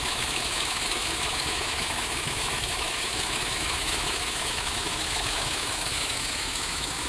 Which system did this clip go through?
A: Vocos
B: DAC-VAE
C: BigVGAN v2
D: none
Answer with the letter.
B